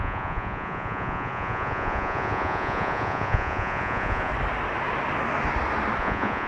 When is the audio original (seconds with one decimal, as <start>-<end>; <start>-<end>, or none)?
4.3-6.0